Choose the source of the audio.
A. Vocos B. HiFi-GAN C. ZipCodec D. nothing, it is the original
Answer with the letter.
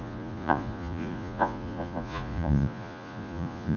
A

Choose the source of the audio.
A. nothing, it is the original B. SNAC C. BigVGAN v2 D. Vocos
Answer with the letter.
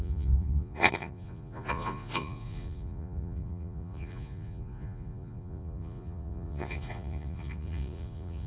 D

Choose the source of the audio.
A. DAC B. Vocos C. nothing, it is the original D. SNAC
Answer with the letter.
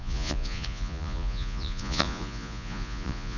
B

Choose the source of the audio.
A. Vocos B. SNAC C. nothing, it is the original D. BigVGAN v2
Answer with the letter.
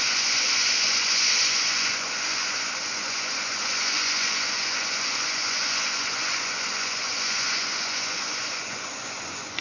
A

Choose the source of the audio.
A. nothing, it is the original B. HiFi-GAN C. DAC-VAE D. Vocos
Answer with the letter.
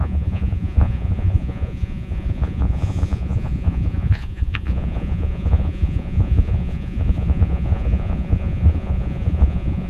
D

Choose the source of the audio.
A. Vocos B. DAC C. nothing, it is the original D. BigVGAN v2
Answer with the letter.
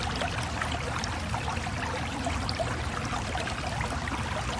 C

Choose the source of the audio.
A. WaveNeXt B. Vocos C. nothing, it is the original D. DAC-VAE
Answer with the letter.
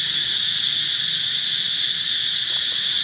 B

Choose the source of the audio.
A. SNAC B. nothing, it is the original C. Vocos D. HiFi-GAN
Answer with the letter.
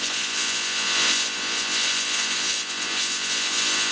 C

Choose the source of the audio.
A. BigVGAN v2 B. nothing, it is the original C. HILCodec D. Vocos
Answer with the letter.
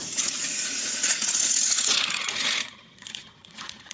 D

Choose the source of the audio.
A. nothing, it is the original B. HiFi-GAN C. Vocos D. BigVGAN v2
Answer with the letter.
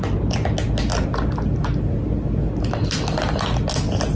A